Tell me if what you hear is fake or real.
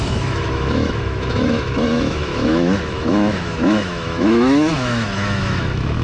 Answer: fake